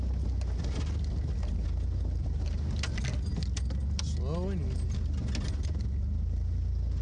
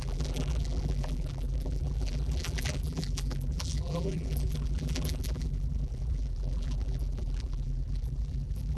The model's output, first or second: second